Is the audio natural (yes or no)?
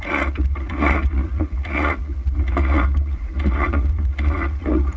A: no